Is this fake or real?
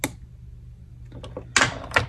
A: real